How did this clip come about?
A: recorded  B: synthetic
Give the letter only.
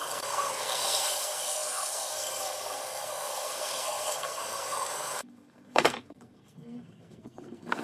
B